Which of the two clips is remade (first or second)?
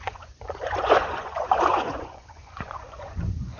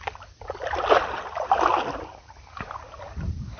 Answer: first